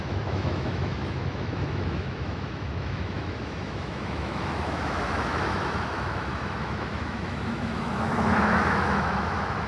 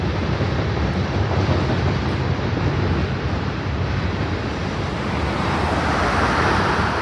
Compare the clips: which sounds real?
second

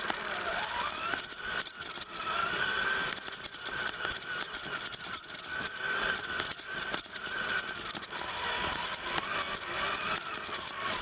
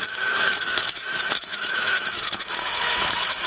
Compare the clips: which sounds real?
first